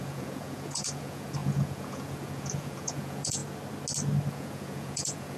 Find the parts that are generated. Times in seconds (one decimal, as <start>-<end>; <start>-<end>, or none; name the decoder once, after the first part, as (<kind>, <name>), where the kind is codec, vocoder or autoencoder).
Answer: 0.0-3.4 (vocoder, Vocos); 4.3-5.4